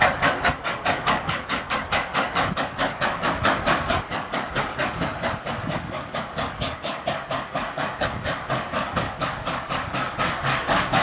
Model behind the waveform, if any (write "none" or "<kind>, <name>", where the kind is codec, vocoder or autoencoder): codec, DAC